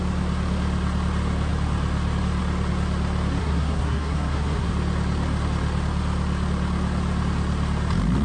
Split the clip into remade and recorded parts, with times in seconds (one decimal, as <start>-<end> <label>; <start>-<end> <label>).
0.0-3.4 recorded; 3.4-4.7 remade; 4.7-8.2 recorded